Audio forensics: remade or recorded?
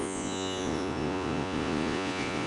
remade